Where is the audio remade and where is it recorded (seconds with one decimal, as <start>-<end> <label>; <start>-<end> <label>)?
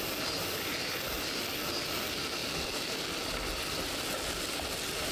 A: 0.0-0.4 recorded; 0.4-1.5 remade; 1.5-5.1 recorded